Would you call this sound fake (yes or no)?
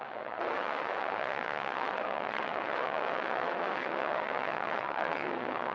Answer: yes